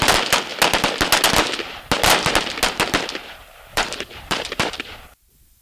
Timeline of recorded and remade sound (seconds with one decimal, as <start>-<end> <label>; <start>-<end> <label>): 0.0-3.7 recorded; 3.7-4.6 remade; 4.6-5.6 recorded